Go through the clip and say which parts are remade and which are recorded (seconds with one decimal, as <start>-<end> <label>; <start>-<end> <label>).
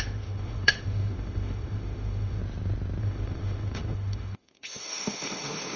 0.0-2.4 remade; 2.4-3.0 recorded; 3.0-5.8 remade